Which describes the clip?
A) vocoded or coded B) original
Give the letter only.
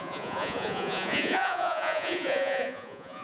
A